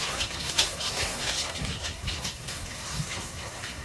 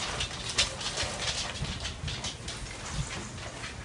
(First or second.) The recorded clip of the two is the second